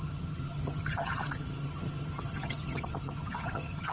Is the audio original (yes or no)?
no